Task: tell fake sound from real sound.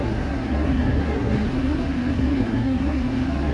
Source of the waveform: fake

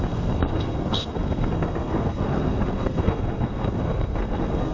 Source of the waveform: fake